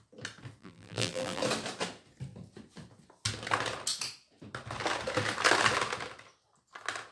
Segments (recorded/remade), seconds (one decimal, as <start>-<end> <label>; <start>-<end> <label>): 0.0-0.6 recorded; 0.6-1.4 remade; 1.4-7.1 recorded

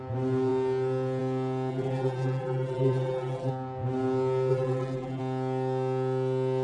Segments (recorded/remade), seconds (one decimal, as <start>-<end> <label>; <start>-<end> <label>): 0.0-1.7 recorded; 1.7-3.5 remade; 3.5-4.5 recorded; 4.5-5.2 remade; 5.2-6.6 recorded

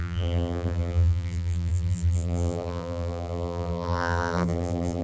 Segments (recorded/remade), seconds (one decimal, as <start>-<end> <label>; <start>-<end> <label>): 0.0-5.0 remade